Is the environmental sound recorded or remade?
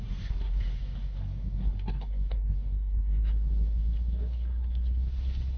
remade